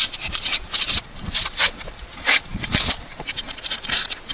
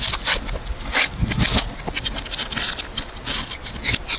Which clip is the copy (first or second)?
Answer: first